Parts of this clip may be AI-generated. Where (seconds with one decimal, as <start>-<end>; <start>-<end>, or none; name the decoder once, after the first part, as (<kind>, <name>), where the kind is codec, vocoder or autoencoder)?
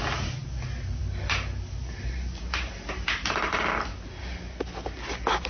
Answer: none